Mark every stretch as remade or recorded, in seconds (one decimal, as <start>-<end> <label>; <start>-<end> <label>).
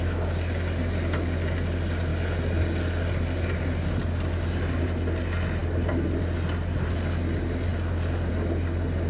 0.0-5.6 recorded; 5.6-6.2 remade; 6.2-7.7 recorded; 7.7-8.3 remade; 8.3-9.1 recorded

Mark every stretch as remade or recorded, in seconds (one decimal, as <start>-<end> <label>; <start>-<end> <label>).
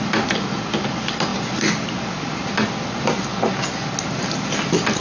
0.0-5.0 recorded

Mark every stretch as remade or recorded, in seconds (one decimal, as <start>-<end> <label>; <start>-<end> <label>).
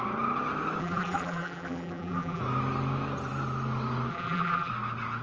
0.0-0.8 recorded; 0.8-2.4 remade; 2.4-4.1 recorded; 4.1-4.7 remade; 4.7-5.2 recorded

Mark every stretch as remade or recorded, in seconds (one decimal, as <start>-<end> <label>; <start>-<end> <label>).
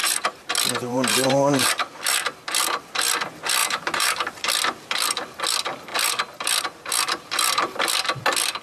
0.0-0.5 remade; 0.5-0.9 recorded; 0.9-1.7 remade; 1.7-3.6 recorded; 3.6-4.5 remade; 4.5-8.6 recorded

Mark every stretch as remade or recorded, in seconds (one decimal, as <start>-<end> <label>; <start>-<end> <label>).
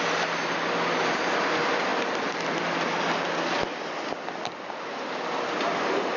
0.0-1.9 recorded; 1.9-2.6 remade; 2.6-6.2 recorded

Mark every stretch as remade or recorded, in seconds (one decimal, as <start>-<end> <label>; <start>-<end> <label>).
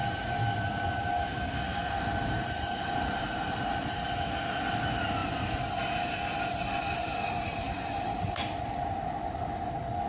0.0-1.7 recorded; 1.7-3.6 remade; 3.6-5.2 recorded; 5.2-9.7 remade; 9.7-10.1 recorded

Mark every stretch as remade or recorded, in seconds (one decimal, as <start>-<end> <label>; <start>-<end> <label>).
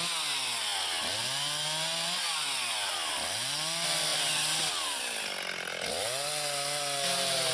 0.0-7.5 recorded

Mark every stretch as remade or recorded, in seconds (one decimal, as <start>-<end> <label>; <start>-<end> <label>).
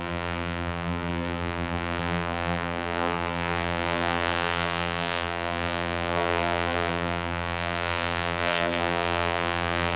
0.0-10.0 remade